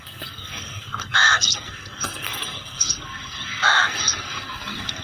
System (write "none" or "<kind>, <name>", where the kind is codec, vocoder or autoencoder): codec, SNAC